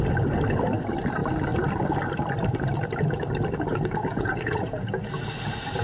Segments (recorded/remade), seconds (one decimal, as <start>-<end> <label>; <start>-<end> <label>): 0.0-3.7 recorded; 3.7-4.8 remade; 4.8-5.8 recorded